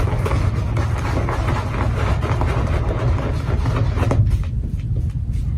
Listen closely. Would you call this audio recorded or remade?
recorded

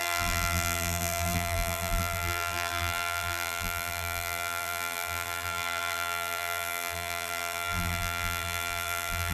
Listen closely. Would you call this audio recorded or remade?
remade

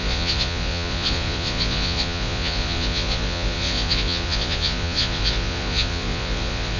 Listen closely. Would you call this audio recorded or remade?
remade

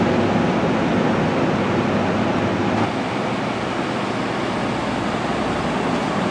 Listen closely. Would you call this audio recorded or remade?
recorded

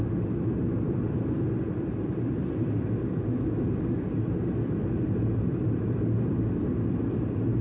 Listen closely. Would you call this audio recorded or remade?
remade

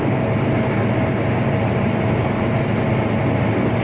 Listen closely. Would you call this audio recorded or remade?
recorded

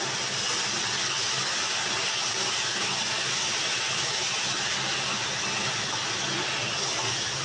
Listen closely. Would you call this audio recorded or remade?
recorded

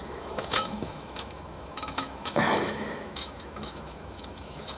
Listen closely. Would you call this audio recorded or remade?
remade